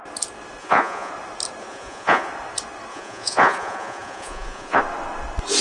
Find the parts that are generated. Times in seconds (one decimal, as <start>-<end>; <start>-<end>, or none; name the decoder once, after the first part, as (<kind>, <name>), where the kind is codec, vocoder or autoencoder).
0.6-1.1 (vocoder, Vocos); 1.6-2.3; 2.9-4.8